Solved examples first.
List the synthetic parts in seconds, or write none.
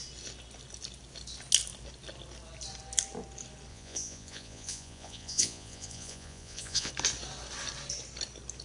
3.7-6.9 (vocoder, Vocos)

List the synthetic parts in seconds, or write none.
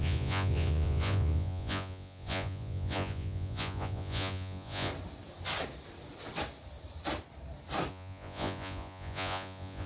0.0-4.9 (vocoder, Vocos); 7.9-9.9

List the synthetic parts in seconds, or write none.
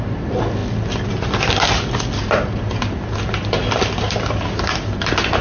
none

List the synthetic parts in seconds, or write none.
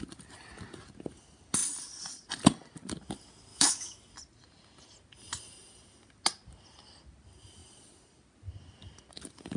3.5-4.1 (autoencoder, DAC-VAE)